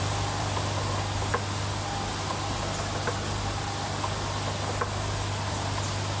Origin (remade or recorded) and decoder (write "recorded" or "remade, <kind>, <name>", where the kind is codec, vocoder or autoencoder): recorded